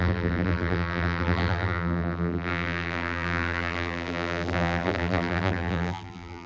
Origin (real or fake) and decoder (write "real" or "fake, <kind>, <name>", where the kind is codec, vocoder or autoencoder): fake, vocoder, BigVGAN v2